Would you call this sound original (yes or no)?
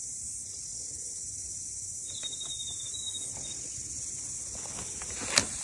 yes